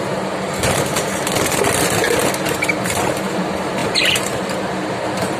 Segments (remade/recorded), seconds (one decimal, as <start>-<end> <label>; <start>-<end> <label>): 0.0-5.4 recorded